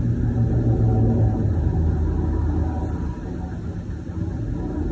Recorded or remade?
recorded